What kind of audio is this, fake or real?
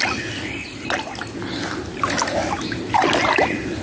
real